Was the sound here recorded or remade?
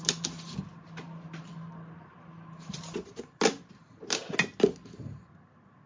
recorded